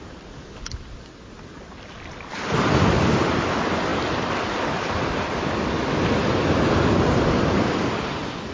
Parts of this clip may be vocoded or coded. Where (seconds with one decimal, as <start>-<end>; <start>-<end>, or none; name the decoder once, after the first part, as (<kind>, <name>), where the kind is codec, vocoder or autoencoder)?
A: none